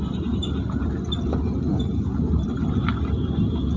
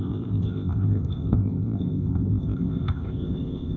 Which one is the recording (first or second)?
first